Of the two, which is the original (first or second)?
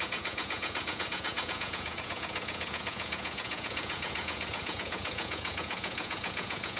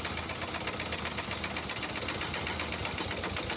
second